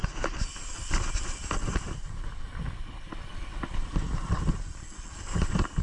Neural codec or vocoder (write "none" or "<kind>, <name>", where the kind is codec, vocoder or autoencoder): none